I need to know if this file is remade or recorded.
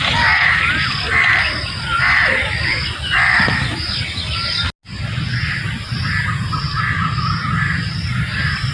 recorded